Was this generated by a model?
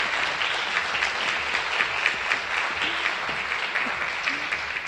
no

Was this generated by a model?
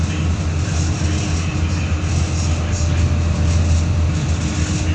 no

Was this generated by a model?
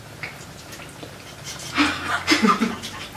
no